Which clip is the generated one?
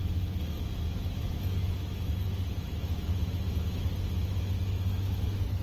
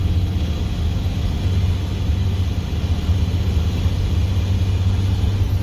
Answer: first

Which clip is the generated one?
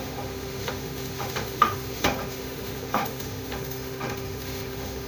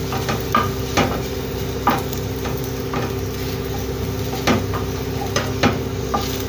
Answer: first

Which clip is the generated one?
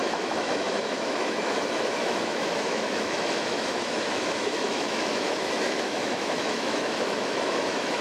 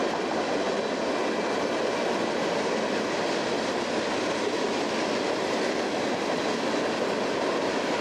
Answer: first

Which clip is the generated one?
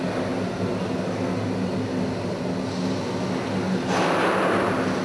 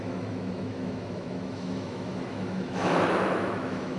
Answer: second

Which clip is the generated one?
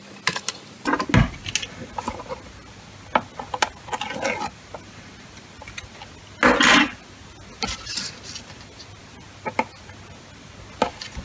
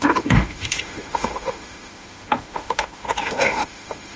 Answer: second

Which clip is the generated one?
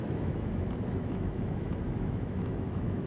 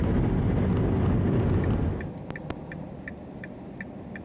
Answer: first